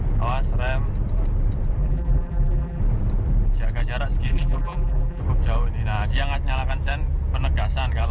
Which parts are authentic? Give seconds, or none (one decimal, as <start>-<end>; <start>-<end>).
0.0-1.8; 2.8-4.3; 5.2-8.1